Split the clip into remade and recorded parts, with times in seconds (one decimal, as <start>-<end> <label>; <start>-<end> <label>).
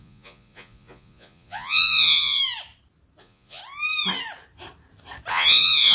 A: 0.0-2.4 remade; 2.4-3.2 recorded; 3.2-3.6 remade; 3.6-5.3 recorded; 5.3-5.9 remade